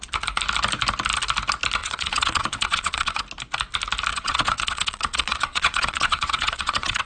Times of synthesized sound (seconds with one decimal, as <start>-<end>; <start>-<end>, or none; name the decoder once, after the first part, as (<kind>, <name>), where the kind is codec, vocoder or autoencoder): 1.8-3.2 (vocoder, WaveNeXt); 4.1-7.1